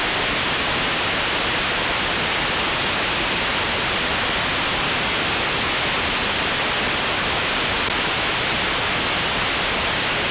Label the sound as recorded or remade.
recorded